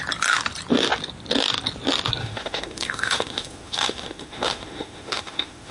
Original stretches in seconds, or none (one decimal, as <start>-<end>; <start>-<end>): 0.0-2.2